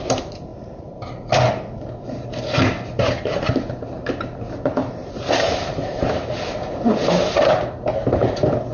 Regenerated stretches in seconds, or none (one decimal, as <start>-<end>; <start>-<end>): 0.5-1.0; 4.8-6.3